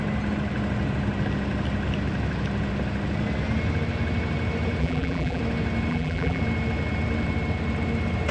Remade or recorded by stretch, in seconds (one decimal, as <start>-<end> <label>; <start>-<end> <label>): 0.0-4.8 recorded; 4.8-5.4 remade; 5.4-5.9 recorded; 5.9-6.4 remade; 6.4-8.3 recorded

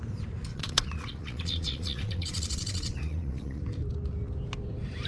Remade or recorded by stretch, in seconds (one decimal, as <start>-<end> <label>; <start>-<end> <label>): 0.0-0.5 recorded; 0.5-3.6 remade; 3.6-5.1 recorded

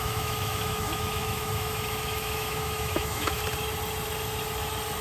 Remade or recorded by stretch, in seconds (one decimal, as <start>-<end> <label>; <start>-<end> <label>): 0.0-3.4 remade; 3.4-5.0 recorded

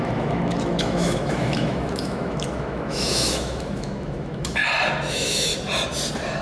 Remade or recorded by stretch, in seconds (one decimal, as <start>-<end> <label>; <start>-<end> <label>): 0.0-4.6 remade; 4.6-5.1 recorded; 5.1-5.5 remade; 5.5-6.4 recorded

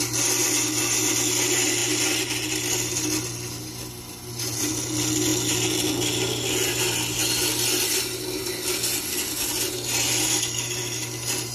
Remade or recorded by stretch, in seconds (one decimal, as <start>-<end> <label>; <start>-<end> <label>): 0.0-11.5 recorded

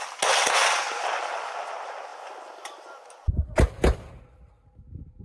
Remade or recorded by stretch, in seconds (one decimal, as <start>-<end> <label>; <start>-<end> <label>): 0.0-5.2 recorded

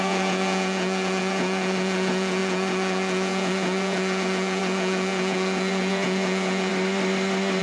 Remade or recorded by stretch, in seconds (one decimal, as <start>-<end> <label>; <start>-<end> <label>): 0.0-6.7 remade; 6.7-7.6 recorded

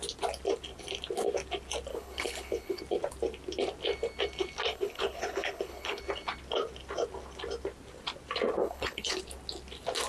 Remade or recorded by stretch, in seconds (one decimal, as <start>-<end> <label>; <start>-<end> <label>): 0.0-1.9 recorded; 1.9-2.8 remade; 2.8-4.7 recorded; 4.7-6.0 remade; 6.0-8.6 recorded; 8.6-9.2 remade; 9.2-10.1 recorded